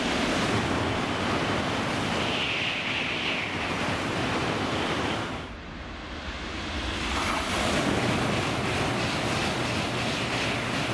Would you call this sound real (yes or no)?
yes